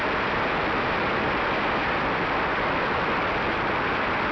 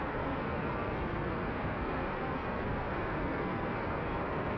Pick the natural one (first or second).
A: first